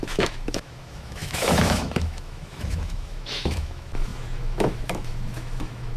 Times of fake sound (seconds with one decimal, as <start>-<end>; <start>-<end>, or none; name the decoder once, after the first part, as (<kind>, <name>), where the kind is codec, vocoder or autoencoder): 0.0-6.0 (autoencoder, DAC-VAE)